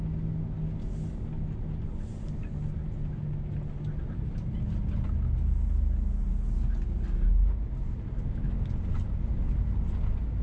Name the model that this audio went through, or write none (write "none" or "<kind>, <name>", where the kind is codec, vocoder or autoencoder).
none